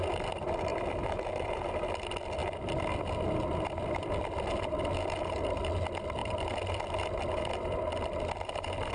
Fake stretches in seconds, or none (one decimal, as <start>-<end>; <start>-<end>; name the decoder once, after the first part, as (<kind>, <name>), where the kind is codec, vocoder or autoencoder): none